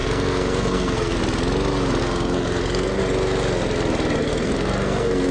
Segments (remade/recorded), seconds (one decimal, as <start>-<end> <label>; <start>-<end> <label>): 0.0-1.2 remade; 1.2-2.0 recorded; 2.0-3.0 remade; 3.0-4.2 recorded; 4.2-5.3 remade